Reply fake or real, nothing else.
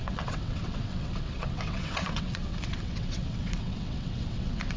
fake